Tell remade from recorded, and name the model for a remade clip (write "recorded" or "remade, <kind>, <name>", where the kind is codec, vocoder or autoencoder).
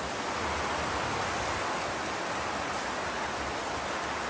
recorded